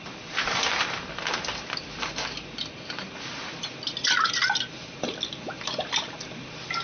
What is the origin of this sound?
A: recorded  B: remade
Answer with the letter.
A